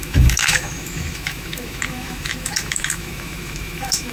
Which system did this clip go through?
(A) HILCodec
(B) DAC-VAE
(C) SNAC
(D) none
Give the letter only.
B